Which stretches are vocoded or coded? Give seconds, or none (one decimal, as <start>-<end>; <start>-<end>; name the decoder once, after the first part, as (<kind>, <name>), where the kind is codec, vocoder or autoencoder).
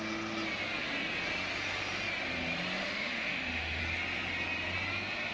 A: 2.8-3.8 (autoencoder, DAC-VAE)